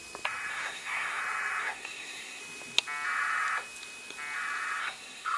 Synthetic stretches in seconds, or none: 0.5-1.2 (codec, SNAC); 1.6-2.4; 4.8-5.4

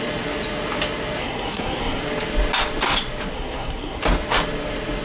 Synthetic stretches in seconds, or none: 1.2-2.0 (codec, SNAC); 3.3-4.0

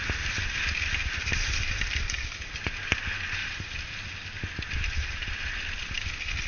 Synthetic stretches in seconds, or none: none

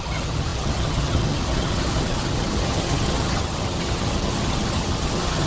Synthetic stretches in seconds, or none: 0.0-5.5 (vocoder, HiFi-GAN)

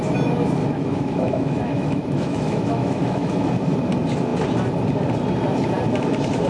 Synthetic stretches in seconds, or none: 0.6-3.5 (autoencoder, DAC-VAE)